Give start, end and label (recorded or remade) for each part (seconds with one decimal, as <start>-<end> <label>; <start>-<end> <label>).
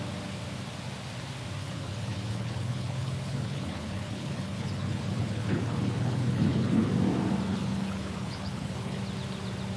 0.0-1.6 recorded; 1.6-6.9 remade; 6.9-7.5 recorded; 7.5-9.0 remade; 9.0-9.8 recorded